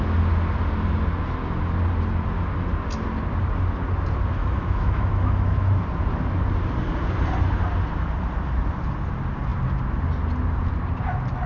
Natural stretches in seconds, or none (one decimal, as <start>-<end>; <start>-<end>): 0.0-4.4; 5.7-11.5